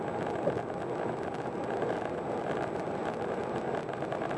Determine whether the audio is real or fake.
real